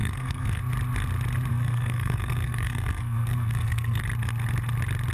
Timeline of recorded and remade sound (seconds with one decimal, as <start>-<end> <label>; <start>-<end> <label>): 0.0-0.6 remade; 0.6-1.5 recorded; 1.5-4.0 remade; 4.0-5.1 recorded